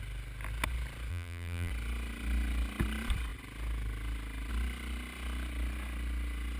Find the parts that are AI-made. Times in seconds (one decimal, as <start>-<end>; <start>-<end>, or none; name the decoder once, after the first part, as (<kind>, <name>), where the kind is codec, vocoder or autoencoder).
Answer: 1.1-1.7 (vocoder, BigVGAN v2)